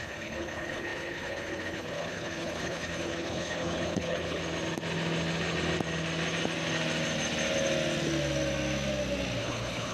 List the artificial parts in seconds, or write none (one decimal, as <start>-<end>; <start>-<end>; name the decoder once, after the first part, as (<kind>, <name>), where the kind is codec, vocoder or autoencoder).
0.0-4.4 (codec, HILCodec); 9.4-9.9